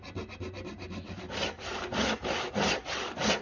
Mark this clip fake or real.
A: real